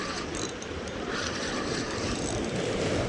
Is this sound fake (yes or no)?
no